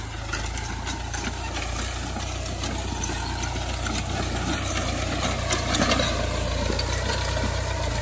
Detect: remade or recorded recorded